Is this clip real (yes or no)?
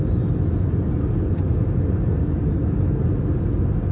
yes